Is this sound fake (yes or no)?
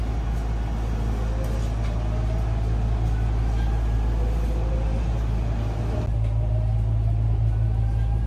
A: no